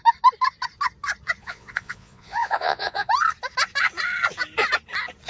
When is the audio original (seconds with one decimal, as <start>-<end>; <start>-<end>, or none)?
0.0-1.4; 3.1-5.3